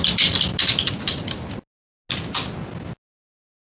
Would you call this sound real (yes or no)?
yes